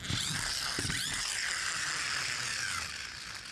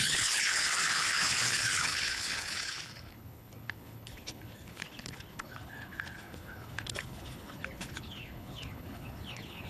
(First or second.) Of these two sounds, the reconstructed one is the second